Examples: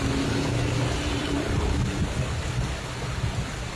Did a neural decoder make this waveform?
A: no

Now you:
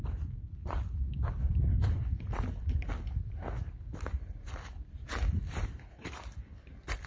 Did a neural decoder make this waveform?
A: no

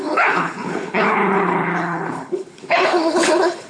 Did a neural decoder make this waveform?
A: yes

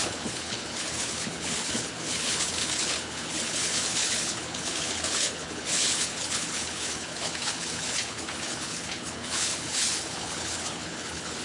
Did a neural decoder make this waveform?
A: yes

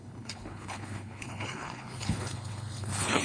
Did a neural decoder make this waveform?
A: yes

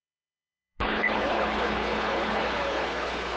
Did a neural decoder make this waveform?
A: yes